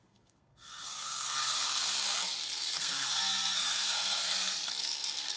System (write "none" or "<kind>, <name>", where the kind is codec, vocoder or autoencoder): codec, SNAC